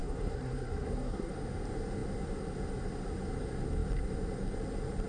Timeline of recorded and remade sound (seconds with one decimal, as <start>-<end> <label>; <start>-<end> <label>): 0.0-1.3 remade; 1.3-5.1 recorded